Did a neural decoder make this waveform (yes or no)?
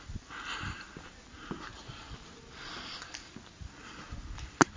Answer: yes